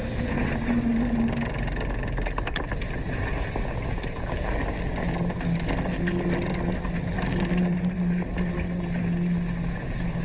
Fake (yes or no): no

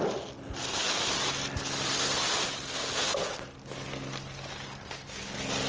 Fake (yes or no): no